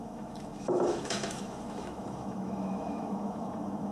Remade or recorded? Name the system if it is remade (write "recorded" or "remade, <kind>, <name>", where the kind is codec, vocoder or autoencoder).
remade, autoencoder, DAC-VAE